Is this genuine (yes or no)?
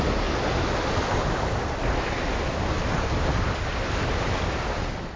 yes